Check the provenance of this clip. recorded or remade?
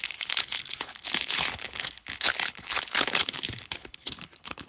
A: remade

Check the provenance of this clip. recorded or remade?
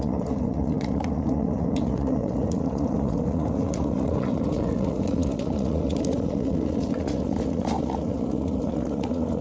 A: remade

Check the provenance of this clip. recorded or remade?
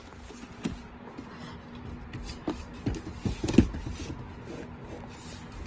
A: recorded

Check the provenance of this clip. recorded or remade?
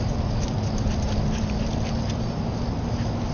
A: recorded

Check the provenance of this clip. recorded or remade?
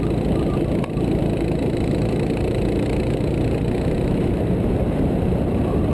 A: remade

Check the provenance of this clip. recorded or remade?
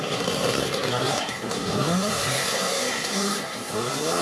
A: remade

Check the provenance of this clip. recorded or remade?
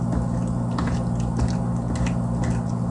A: recorded